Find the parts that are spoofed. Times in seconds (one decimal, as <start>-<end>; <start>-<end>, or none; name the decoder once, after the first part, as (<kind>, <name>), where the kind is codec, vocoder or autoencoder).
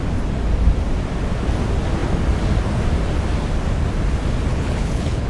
4.5-5.3 (codec, HILCodec)